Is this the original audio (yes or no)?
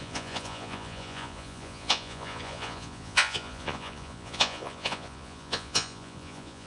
no